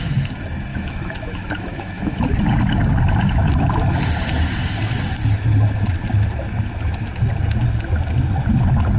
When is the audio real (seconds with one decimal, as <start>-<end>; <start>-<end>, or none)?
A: 0.0-0.7; 2.4-9.0